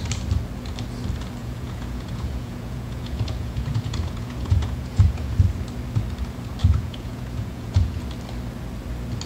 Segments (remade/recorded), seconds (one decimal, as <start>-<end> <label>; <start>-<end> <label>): 0.0-1.4 recorded; 1.4-5.3 remade; 5.3-6.6 recorded; 6.6-8.0 remade; 8.0-9.3 recorded